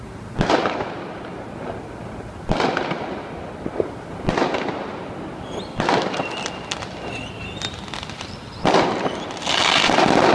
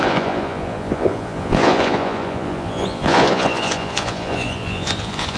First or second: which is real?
first